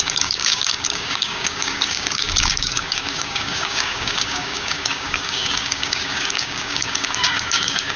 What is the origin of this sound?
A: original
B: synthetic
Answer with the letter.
B